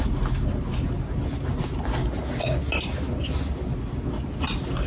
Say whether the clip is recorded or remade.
recorded